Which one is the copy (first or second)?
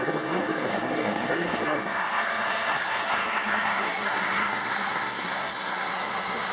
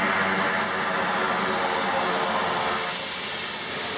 first